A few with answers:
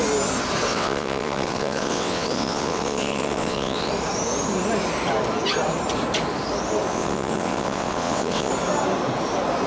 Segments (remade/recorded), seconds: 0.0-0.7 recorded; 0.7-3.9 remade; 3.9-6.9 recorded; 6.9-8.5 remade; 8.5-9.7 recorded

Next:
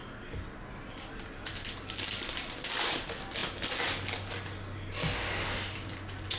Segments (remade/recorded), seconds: 0.0-6.4 recorded